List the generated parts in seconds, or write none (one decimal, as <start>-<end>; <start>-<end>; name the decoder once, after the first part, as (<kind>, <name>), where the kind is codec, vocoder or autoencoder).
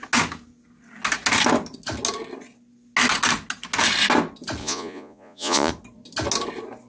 4.6-5.7 (vocoder, Vocos)